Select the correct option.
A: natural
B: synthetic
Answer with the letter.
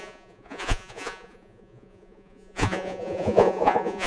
B